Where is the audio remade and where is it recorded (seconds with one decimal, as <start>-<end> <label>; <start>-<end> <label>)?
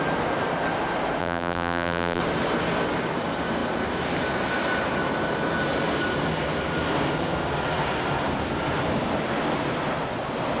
0.0-1.2 recorded; 1.2-2.2 remade; 2.2-10.6 recorded